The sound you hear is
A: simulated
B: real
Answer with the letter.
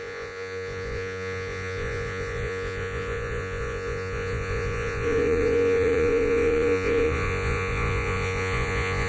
A